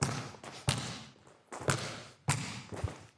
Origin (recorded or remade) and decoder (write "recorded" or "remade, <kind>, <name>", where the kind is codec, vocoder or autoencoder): recorded